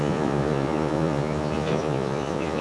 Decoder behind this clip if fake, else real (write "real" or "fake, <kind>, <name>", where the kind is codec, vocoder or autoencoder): fake, vocoder, Vocos